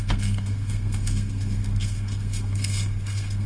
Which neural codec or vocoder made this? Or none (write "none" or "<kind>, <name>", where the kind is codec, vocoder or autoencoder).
codec, SNAC